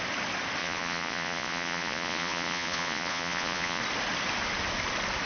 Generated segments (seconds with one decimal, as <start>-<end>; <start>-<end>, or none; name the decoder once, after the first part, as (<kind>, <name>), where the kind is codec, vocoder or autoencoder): 0.6-3.8 (vocoder, Vocos)